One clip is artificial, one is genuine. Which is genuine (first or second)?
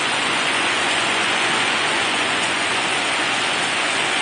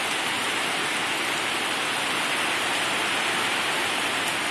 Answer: second